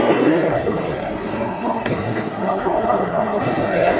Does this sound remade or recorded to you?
remade